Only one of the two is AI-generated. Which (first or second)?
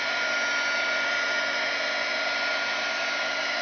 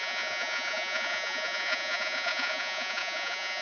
second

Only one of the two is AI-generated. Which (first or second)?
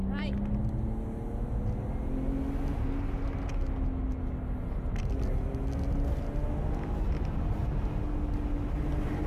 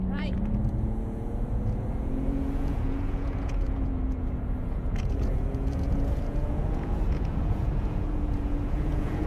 second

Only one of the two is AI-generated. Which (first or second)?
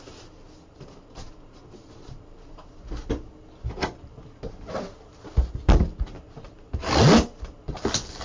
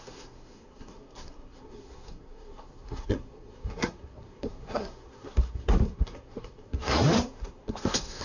second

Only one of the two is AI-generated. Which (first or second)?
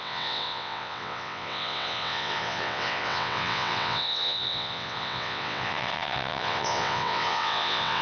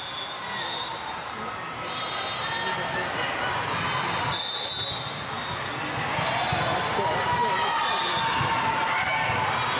first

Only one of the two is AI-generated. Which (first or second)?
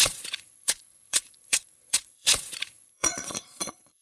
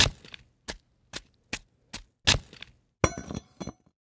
first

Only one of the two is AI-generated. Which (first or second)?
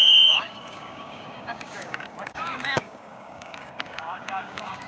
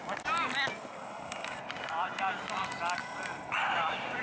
first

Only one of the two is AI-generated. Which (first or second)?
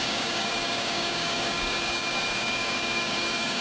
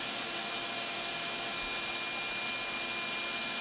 first